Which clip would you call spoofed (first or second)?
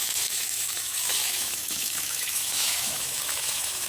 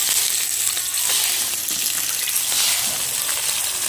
first